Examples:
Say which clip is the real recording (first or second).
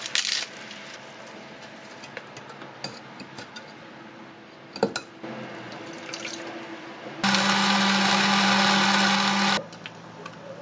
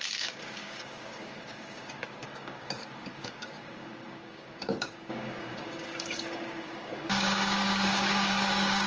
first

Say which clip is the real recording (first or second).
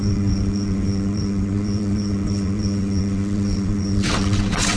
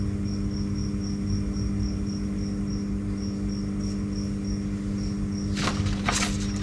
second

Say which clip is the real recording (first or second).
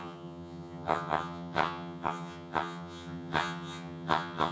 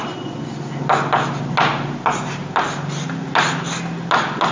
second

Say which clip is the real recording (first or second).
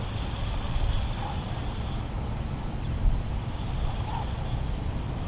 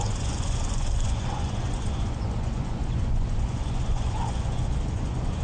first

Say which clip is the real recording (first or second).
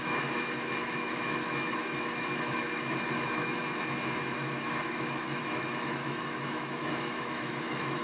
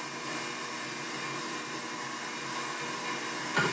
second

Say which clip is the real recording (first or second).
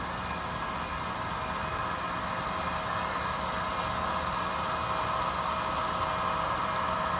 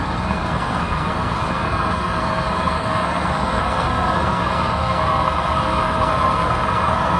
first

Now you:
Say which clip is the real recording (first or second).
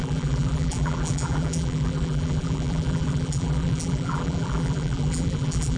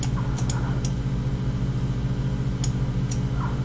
second